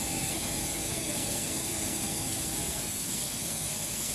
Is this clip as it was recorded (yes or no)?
no